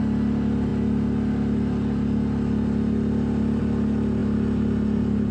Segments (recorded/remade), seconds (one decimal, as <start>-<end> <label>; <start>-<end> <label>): 0.0-5.3 recorded